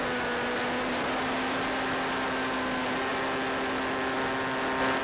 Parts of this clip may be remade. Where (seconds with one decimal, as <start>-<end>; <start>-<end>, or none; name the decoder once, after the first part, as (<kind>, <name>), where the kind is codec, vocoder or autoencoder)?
none